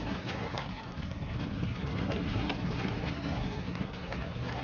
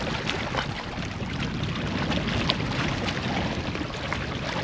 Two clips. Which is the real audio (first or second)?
second